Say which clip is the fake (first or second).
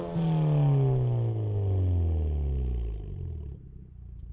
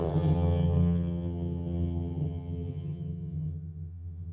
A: second